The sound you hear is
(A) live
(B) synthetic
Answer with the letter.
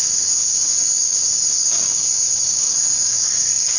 B